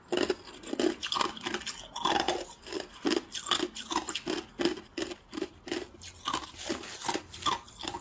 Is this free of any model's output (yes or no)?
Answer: yes